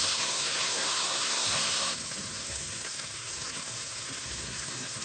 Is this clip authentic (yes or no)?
no